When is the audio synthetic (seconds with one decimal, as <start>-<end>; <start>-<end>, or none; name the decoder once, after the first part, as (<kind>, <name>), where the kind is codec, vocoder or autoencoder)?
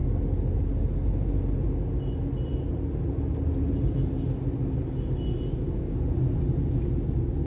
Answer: none